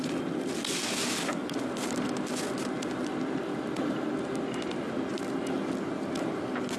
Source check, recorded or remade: recorded